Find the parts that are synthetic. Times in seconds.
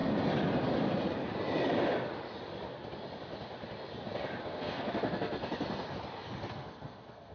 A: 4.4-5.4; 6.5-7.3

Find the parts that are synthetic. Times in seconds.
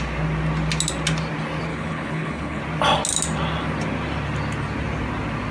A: 1.7-2.6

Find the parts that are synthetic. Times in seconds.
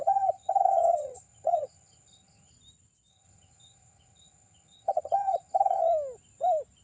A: 0.0-2.5; 3.1-5.8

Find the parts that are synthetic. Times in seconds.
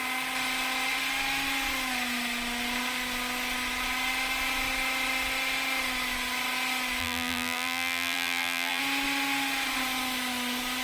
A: 7.0-8.8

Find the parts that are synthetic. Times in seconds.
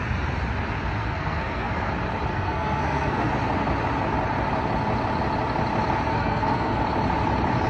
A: 1.0-1.9; 2.3-3.3; 6.1-6.8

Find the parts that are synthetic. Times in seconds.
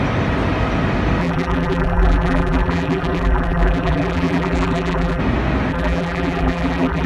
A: 1.2-5.2; 5.7-7.1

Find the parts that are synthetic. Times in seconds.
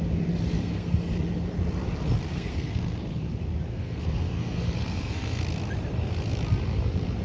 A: 0.6-1.1; 2.3-3.3; 3.7-5.4